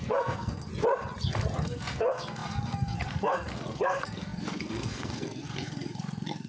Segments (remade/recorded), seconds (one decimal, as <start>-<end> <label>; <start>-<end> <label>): 0.0-0.7 remade; 0.7-1.6 recorded; 1.6-6.5 remade

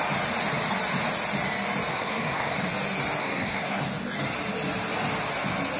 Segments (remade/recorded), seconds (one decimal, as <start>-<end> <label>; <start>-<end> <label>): 0.0-1.9 recorded; 1.9-2.5 remade; 2.5-3.2 recorded; 3.2-3.8 remade; 3.8-5.8 recorded